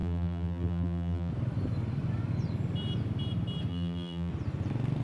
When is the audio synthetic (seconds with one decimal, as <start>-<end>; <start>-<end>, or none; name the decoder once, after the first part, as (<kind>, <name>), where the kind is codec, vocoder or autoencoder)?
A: 0.0-1.3 (vocoder, BigVGAN v2); 3.7-4.3